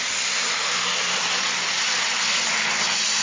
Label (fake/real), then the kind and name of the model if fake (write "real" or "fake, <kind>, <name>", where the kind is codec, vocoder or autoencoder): real